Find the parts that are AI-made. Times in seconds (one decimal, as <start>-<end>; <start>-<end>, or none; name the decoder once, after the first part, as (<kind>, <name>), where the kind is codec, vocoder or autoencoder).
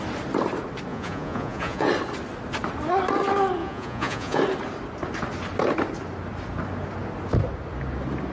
0.9-1.9 (vocoder, Vocos); 3.6-4.4